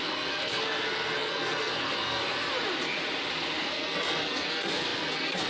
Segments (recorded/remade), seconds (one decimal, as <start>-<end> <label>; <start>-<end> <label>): 0.0-2.2 remade; 2.2-3.6 recorded; 3.6-5.5 remade